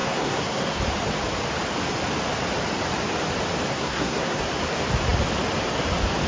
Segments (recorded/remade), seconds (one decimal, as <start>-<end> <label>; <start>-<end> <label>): 0.0-0.8 remade; 0.8-3.7 recorded; 3.7-4.4 remade; 4.4-6.3 recorded